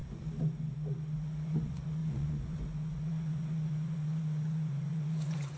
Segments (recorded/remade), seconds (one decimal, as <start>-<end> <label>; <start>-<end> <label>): 0.0-1.2 recorded; 1.2-5.6 remade